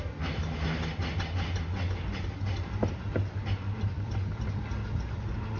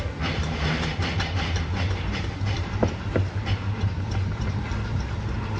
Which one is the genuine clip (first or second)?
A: first